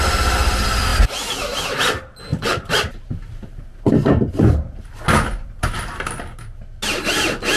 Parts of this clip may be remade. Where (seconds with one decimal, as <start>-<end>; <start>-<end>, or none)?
2.3-4.9